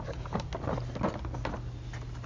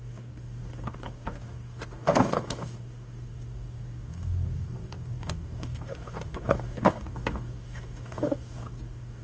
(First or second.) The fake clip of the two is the second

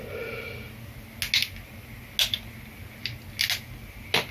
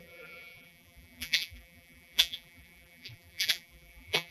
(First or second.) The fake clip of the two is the second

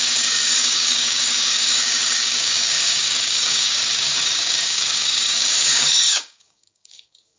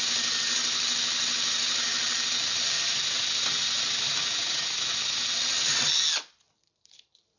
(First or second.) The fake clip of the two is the first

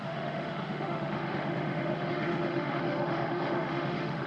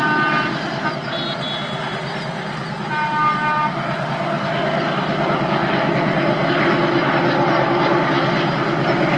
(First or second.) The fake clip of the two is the first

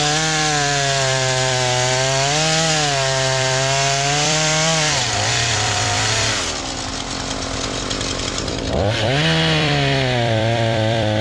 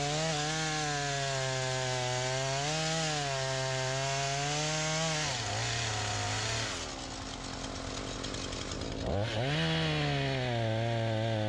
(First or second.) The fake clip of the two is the first